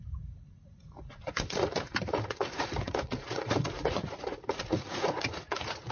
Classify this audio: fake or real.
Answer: fake